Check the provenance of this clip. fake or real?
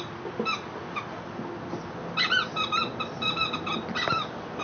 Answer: real